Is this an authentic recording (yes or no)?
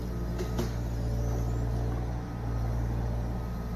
yes